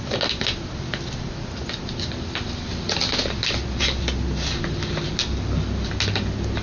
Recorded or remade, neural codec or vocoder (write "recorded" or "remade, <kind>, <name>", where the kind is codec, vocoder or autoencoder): recorded